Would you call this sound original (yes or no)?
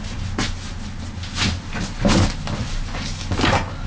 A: yes